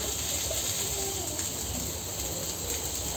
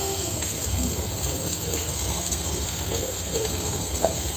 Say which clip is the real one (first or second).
first